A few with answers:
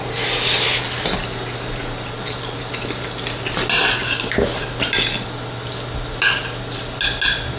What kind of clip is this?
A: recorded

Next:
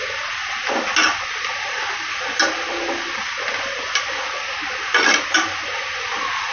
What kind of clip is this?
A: recorded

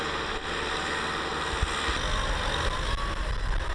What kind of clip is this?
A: recorded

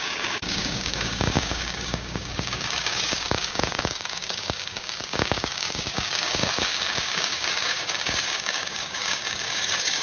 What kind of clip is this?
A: remade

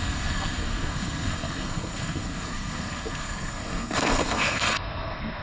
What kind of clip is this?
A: remade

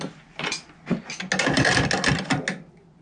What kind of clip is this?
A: recorded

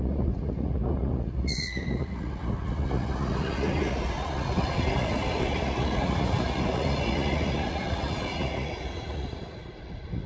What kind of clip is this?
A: remade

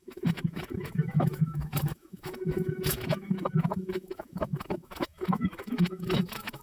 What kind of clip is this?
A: remade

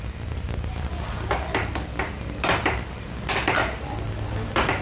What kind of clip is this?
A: recorded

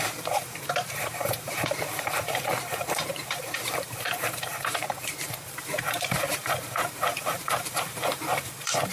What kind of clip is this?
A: remade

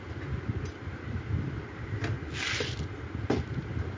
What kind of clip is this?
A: recorded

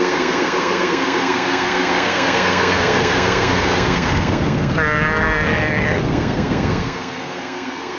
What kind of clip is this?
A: remade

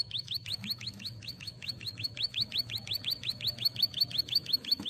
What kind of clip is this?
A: remade